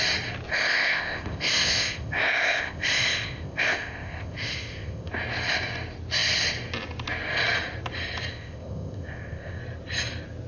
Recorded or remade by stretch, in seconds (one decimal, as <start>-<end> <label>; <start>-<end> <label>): 0.0-0.5 recorded; 0.5-5.1 remade; 5.1-8.3 recorded; 8.3-9.6 remade; 9.6-10.5 recorded